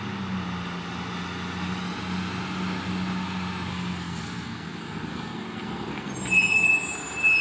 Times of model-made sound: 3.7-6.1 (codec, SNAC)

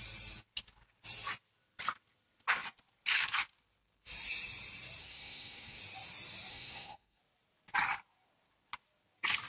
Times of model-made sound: 5.0-5.8 (codec, SNAC); 6.5-7.2

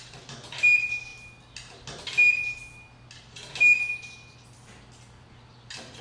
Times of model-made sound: none

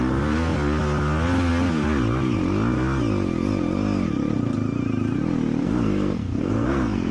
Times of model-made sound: 5.6-7.1 (codec, SNAC)